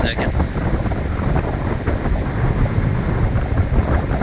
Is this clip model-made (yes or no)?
no